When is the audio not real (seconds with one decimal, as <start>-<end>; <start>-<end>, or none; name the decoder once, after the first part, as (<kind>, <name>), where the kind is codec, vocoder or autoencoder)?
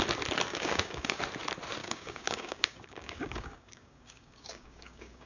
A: 0.5-1.2 (codec, DAC); 1.8-5.3